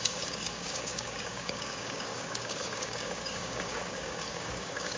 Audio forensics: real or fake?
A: fake